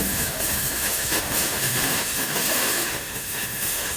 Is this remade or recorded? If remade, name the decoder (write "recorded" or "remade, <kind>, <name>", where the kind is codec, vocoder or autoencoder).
remade, autoencoder, DAC-VAE